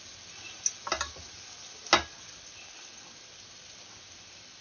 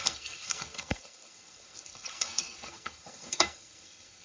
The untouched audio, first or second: first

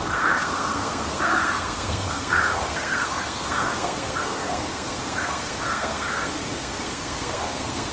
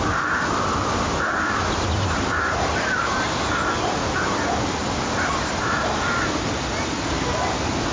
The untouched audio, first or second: second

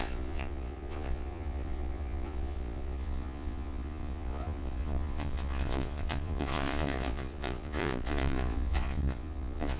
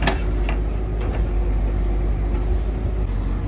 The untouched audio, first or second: second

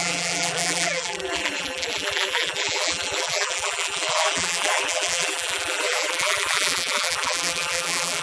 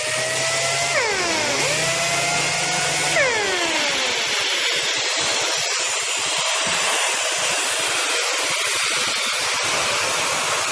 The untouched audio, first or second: second